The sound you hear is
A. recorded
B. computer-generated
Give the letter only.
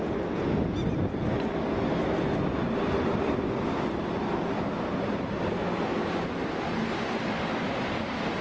A